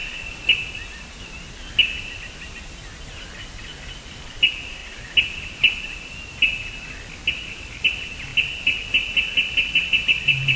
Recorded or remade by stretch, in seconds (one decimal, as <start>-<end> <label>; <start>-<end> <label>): 0.0-4.2 recorded; 4.2-4.8 remade; 4.8-7.3 recorded; 7.3-8.3 remade; 8.3-10.0 recorded; 10.0-10.6 remade